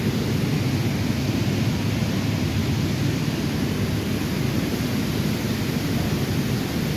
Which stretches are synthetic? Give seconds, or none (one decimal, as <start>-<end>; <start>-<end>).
2.6-3.3

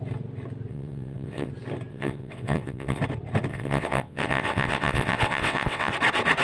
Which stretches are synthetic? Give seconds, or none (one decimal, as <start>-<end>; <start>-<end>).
0.7-1.5; 1.9-3.0; 3.5-5.9

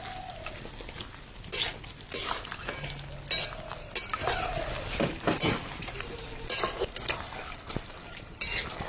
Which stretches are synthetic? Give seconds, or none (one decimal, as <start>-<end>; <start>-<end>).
none

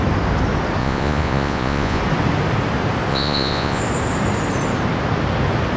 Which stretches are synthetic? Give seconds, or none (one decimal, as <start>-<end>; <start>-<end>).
0.8-2.0; 3.1-3.8

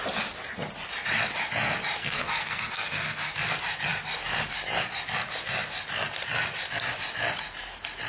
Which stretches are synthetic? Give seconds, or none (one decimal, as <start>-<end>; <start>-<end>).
2.0-3.3

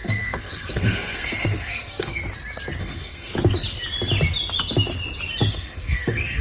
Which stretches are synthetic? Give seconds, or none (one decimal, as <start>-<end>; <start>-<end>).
0.0-2.2; 2.8-3.3; 5.5-6.4

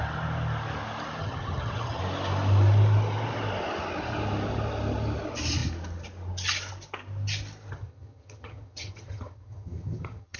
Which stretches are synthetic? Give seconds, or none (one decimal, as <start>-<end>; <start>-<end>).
1.2-2.0; 7.7-10.4